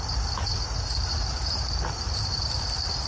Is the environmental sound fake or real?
real